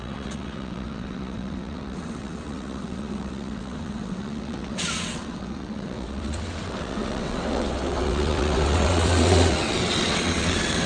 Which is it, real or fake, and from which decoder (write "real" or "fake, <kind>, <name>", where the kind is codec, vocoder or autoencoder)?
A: fake, vocoder, WaveNeXt